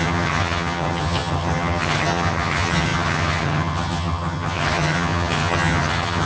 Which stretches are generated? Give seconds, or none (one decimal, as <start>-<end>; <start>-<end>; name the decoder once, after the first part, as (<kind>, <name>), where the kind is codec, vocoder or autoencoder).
0.0-6.2 (vocoder, HiFi-GAN)